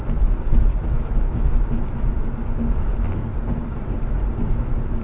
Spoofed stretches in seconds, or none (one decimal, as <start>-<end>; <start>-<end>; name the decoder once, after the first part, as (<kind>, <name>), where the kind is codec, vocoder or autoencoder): 0.7-1.8 (autoencoder, DAC-VAE)